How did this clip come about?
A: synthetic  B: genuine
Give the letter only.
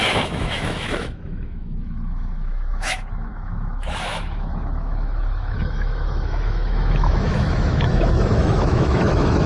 A